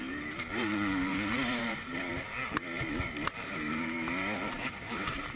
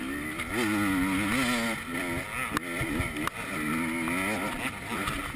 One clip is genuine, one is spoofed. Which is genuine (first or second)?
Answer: second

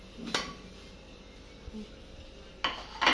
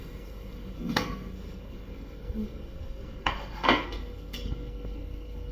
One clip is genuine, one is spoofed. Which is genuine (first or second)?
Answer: first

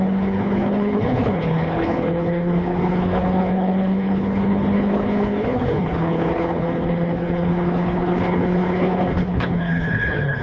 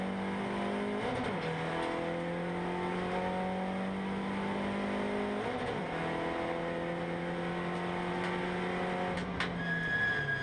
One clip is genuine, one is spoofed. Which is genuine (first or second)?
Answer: second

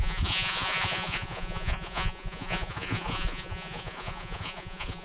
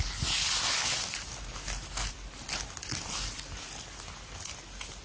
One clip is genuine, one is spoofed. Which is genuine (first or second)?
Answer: second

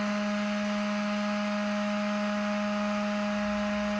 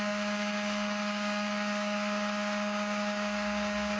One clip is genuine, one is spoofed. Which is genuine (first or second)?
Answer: first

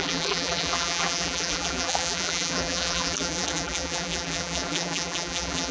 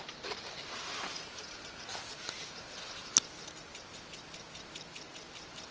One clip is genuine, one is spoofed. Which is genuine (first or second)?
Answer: second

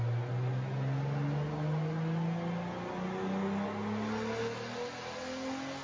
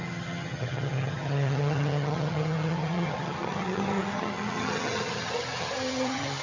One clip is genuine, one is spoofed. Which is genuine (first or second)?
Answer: first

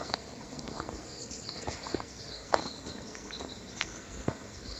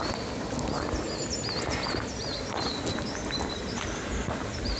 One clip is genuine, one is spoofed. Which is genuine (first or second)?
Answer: second